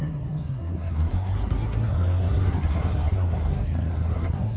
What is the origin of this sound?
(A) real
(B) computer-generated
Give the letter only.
B